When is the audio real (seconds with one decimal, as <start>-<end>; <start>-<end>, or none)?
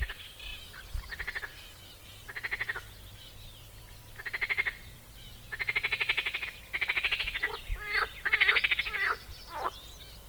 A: 0.0-3.1; 5.7-10.3